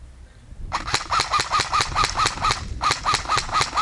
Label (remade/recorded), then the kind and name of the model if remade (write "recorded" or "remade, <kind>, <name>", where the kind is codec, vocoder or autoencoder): recorded